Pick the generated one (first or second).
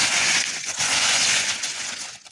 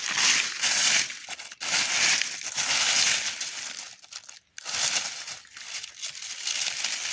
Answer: first